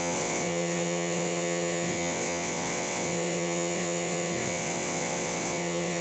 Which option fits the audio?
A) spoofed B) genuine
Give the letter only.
A